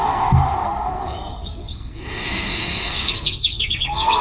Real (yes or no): no